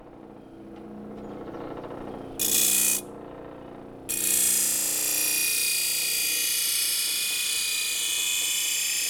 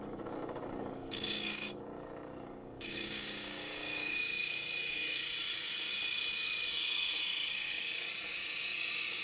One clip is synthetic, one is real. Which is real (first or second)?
first